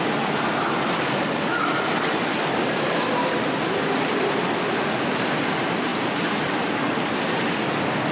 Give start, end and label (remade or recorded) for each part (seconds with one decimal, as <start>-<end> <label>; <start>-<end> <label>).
0.0-8.1 recorded